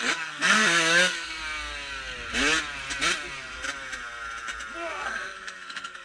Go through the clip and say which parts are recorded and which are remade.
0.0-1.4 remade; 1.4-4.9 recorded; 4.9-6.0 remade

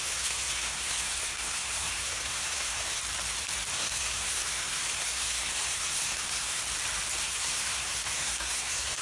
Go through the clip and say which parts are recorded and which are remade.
0.0-3.0 remade; 3.0-3.7 recorded; 3.7-6.6 remade; 6.6-7.2 recorded; 7.2-9.0 remade